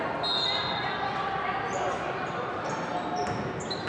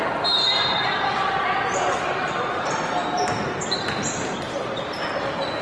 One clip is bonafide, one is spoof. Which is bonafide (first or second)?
first